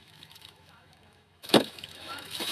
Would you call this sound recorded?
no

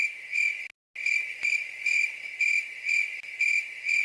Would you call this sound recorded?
yes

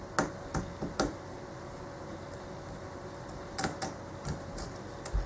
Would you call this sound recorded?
yes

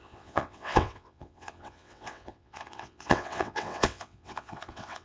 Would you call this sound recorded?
no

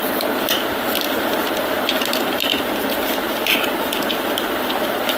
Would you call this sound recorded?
yes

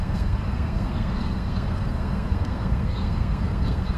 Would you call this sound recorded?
no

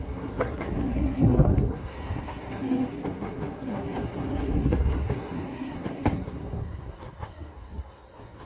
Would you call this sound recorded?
no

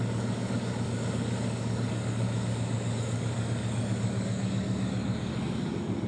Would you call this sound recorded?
no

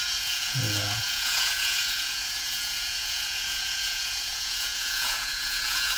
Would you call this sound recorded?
no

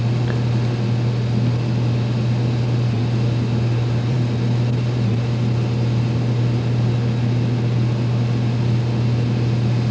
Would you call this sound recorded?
yes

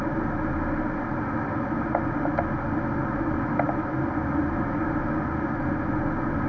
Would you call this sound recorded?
yes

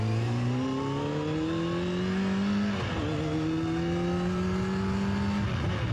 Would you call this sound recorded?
yes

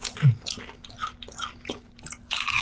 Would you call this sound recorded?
yes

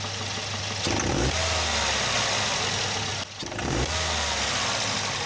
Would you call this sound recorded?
yes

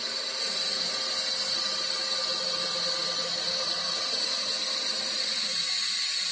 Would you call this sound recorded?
yes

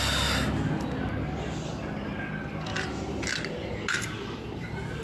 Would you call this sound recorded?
yes